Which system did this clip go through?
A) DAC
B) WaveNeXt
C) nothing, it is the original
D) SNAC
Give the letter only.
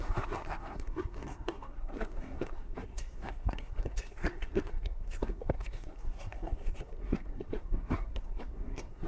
D